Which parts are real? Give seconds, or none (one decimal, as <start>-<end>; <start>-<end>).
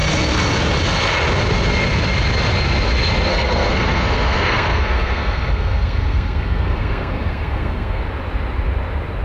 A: 0.0-3.3; 8.0-9.2